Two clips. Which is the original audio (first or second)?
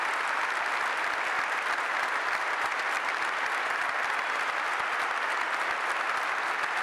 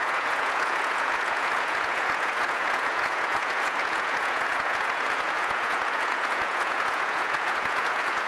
first